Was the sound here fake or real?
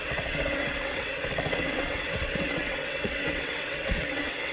fake